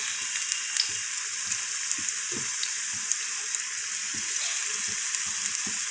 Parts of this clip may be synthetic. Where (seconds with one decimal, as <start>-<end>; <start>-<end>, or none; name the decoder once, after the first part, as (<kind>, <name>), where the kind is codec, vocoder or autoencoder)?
4.1-4.6 (vocoder, Vocos)